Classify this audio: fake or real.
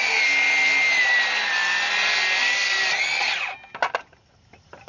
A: real